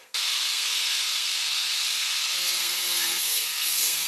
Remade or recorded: remade